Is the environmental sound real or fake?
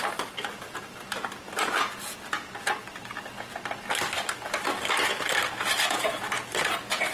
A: real